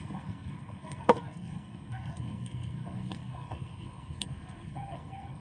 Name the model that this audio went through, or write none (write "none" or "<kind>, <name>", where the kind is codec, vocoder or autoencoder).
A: codec, SNAC